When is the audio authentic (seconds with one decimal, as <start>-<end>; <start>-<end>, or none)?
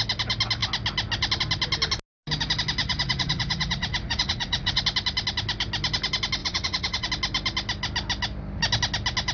0.0-2.8; 4.8-6.4; 7.1-9.3